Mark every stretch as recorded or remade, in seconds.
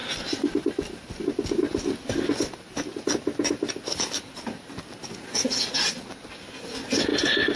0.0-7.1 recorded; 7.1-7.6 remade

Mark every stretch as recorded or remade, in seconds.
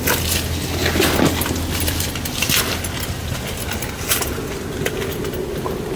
0.0-6.0 recorded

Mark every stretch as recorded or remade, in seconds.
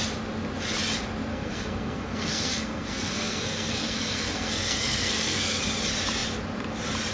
0.0-1.3 recorded; 1.3-5.6 remade; 5.6-7.1 recorded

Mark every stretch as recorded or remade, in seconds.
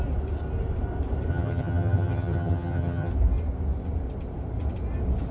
0.0-1.3 recorded; 1.3-3.1 remade; 3.1-5.3 recorded